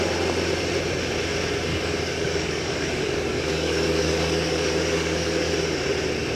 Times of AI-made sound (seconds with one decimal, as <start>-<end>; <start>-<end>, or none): 1.7-5.5